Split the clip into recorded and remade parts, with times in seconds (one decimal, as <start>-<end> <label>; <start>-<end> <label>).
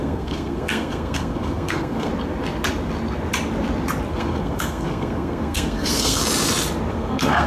0.0-2.1 remade; 2.1-4.1 recorded; 4.1-6.2 remade; 6.2-6.9 recorded; 6.9-7.5 remade